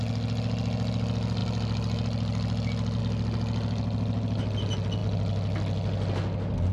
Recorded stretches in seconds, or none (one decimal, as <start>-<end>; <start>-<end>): 0.0-6.7